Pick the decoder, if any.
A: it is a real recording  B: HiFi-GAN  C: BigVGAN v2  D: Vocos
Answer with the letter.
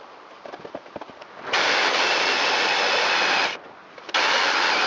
A